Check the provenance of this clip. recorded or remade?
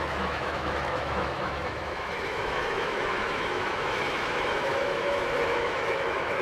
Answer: remade